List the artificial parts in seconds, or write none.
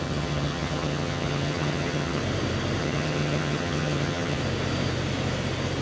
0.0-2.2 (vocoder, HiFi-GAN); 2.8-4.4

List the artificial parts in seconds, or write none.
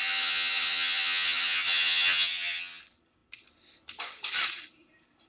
0.0-2.8 (vocoder, HiFi-GAN)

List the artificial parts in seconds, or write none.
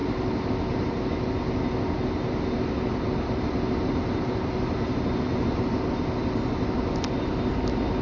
none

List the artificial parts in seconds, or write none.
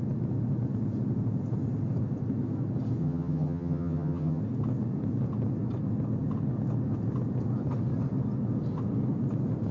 3.0-4.4 (vocoder, HiFi-GAN)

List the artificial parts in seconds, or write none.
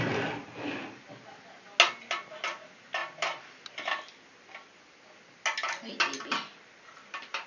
none